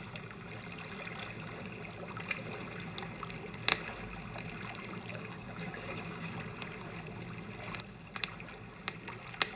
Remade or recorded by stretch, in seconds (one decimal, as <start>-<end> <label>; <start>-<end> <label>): 0.0-5.1 recorded; 5.1-6.3 remade; 6.3-9.6 recorded